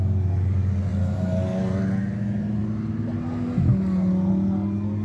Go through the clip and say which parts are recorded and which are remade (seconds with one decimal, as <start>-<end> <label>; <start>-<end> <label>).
0.0-5.0 recorded